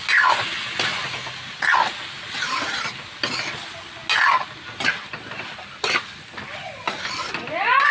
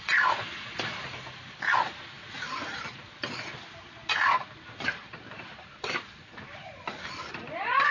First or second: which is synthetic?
second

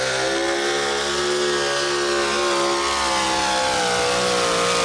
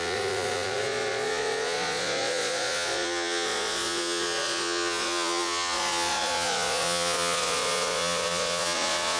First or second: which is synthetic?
second